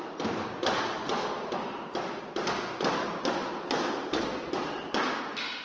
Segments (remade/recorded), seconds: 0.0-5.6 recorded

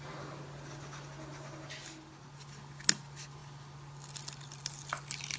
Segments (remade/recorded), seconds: 0.0-5.4 recorded

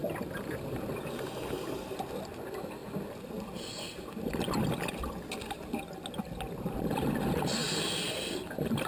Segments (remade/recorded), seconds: 0.0-2.1 remade; 2.1-8.9 recorded

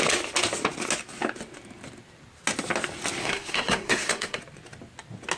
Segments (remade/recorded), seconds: 0.0-3.2 recorded; 3.2-4.4 remade; 4.4-5.4 recorded

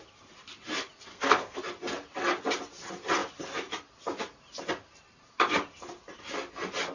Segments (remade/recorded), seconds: 0.0-1.1 recorded; 1.1-1.6 remade; 1.6-6.9 recorded